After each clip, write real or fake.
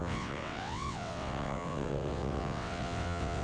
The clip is fake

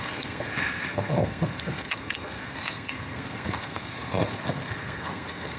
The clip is fake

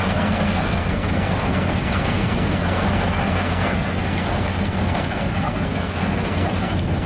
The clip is fake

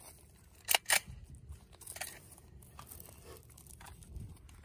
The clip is real